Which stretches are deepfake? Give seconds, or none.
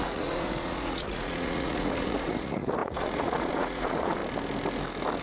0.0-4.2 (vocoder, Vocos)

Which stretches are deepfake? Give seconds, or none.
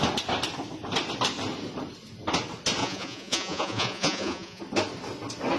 2.8-4.6 (vocoder, Vocos)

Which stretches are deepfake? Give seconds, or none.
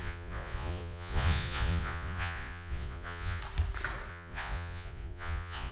0.0-3.4 (vocoder, Vocos); 4.1-5.7